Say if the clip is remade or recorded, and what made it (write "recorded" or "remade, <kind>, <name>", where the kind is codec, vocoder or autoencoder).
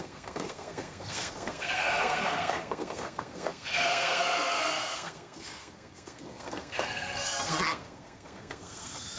remade, codec, SNAC